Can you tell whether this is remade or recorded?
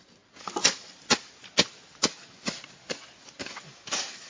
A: recorded